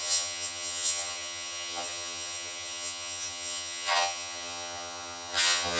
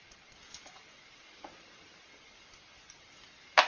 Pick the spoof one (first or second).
first